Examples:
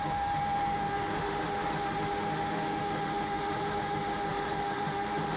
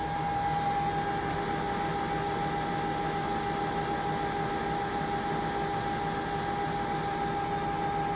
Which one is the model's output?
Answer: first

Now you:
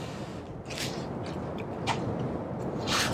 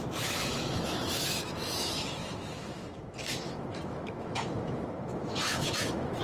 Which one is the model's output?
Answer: second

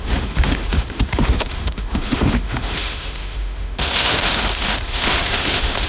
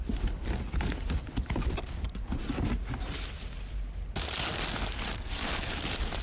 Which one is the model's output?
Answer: first